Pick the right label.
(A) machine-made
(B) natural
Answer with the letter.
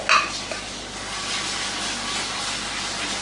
B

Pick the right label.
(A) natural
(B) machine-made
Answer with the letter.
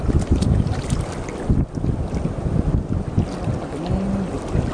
A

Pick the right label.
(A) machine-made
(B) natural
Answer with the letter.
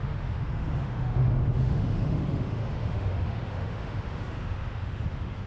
A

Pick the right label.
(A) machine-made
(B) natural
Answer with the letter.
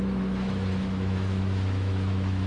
A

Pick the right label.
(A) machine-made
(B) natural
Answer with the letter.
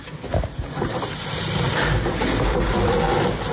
B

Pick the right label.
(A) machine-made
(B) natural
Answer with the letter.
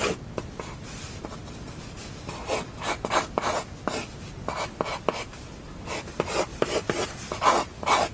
B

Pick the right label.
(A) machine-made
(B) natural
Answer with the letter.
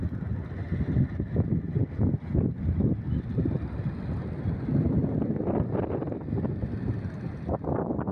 B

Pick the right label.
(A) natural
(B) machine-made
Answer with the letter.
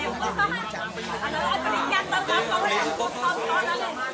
A